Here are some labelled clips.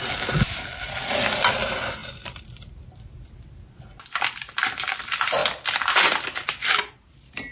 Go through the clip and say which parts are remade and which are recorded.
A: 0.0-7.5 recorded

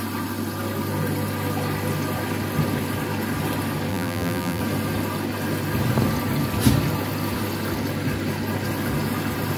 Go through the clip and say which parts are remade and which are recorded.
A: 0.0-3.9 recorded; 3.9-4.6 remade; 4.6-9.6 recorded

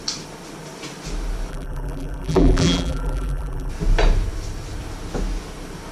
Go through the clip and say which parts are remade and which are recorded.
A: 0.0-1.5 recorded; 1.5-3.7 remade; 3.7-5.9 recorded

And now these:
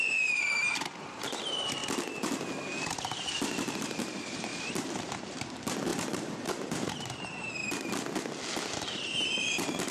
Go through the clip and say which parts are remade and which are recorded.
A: 0.0-1.8 remade; 1.8-3.7 recorded; 3.7-7.6 remade; 7.6-8.9 recorded; 8.9-9.9 remade

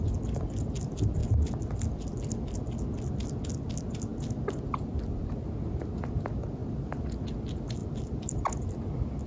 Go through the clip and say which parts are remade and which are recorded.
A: 0.0-9.3 recorded

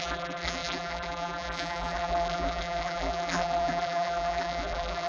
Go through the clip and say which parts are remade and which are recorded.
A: 0.0-5.1 remade